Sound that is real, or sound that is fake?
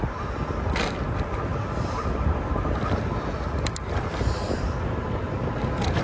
real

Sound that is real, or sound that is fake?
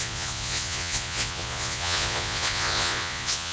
fake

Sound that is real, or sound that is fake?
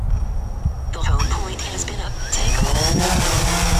real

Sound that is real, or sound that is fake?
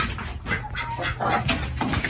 real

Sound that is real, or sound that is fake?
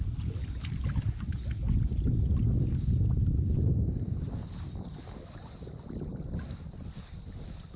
real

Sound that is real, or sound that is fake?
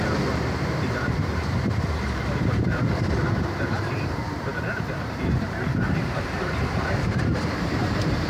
fake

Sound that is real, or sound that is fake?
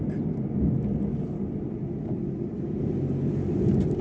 real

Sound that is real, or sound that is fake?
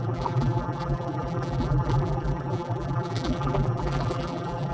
fake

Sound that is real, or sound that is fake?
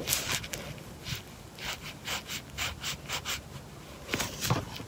real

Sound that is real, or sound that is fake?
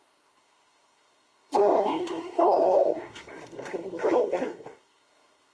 fake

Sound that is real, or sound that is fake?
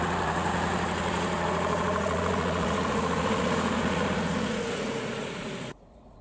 fake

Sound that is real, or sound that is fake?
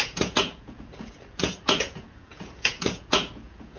fake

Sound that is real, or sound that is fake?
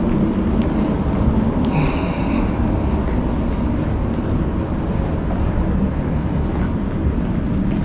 real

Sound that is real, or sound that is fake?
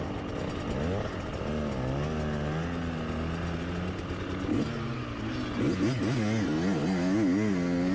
real